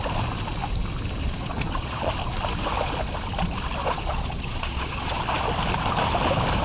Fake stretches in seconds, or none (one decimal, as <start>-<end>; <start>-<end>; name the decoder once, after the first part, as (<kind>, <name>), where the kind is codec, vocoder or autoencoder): 1.2-2.1 (vocoder, Vocos); 3.8-5.2